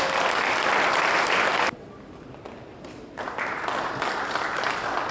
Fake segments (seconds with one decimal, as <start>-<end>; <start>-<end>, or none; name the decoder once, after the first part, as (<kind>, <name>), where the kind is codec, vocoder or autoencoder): 2.7-3.9 (vocoder, BigVGAN v2)